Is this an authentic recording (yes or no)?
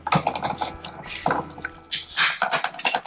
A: yes